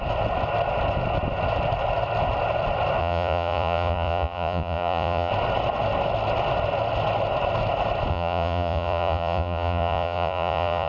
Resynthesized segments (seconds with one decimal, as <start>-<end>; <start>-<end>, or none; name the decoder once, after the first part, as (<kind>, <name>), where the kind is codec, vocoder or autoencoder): 3.0-5.3 (vocoder, Vocos); 8.1-10.9